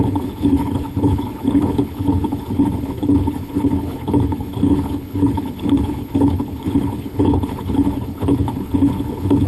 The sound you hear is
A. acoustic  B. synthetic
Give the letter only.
B